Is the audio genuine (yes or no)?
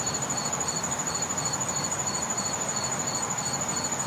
yes